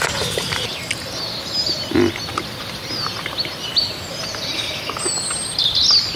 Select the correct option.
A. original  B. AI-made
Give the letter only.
A